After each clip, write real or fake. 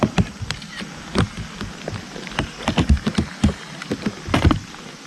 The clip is real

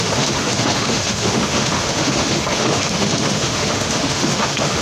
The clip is fake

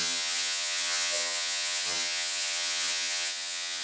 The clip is fake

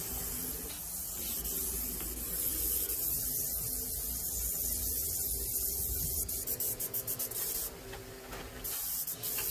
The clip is real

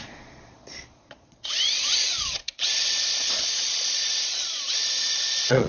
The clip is fake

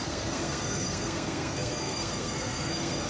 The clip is fake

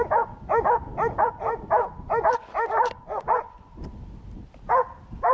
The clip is real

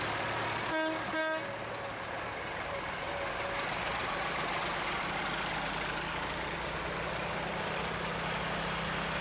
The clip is real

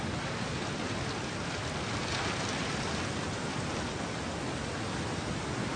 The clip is real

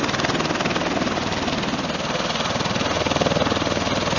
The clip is real